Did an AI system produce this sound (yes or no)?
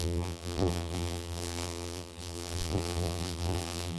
yes